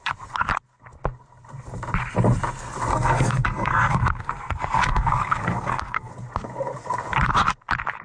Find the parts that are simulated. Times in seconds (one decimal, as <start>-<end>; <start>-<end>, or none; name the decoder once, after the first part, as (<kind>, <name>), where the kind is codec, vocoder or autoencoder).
2.9-6.1 (codec, SNAC)